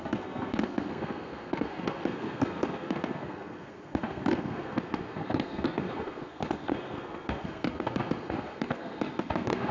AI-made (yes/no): yes